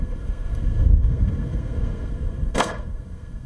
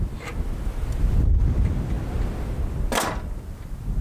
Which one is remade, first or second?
first